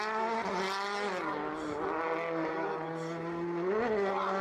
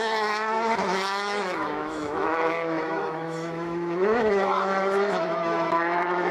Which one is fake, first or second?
second